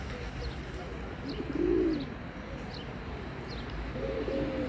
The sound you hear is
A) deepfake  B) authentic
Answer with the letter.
B